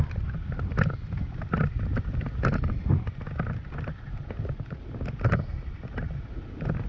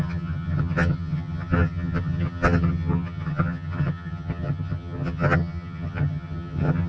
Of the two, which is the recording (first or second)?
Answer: first